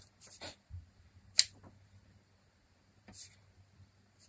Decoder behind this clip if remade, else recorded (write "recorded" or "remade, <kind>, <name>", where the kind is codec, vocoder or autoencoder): recorded